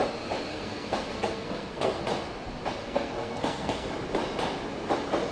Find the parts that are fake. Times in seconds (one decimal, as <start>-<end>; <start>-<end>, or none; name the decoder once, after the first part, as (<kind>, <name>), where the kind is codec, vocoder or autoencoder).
0.5-2.0 (codec, SNAC); 2.8-3.9